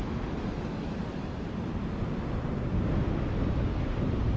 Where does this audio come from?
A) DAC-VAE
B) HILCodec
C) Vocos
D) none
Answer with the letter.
D